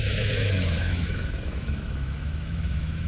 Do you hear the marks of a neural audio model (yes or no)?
yes